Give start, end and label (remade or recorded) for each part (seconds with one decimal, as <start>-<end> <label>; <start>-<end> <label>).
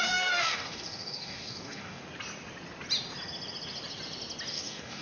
0.0-2.0 remade; 2.0-4.5 recorded; 4.5-5.0 remade